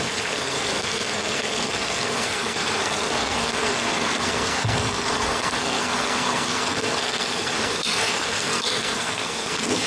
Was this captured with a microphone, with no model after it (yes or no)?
no